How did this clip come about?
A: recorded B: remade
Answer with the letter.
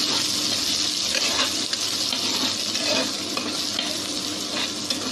A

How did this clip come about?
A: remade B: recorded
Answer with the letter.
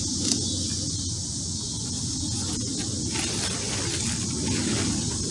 B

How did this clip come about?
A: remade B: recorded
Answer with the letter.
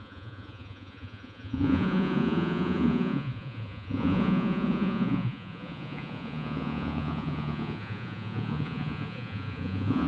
A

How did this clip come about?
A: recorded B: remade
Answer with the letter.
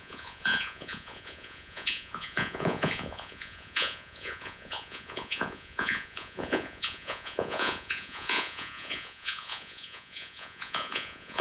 B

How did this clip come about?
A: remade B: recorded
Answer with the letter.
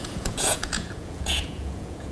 A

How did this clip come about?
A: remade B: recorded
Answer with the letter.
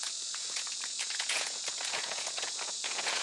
A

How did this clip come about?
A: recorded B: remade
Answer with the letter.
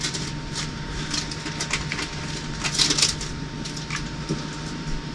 A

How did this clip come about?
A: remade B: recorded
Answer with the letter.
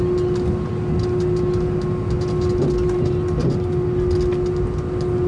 B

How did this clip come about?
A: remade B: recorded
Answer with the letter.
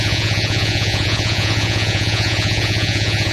A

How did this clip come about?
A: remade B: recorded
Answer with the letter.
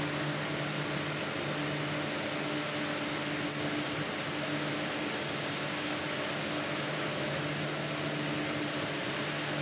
B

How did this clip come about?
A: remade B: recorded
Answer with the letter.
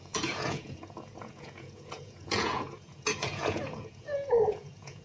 A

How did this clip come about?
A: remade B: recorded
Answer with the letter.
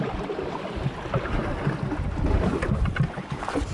B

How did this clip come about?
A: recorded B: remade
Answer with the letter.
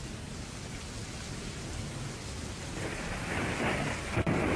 A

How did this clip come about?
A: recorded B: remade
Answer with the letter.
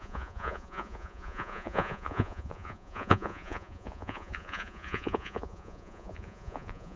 B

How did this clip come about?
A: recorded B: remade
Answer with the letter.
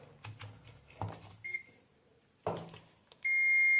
A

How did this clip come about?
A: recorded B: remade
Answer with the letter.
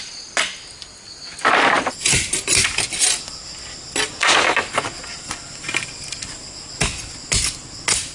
A